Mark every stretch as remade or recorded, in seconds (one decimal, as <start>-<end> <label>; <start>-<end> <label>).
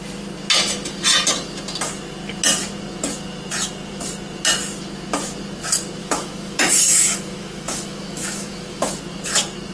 0.0-6.0 recorded; 6.0-8.9 remade; 8.9-9.7 recorded